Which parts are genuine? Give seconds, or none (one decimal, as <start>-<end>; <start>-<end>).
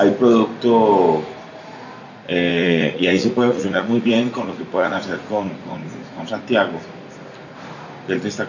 0.0-2.5; 6.4-8.5